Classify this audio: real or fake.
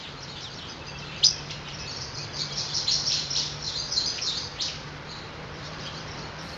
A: fake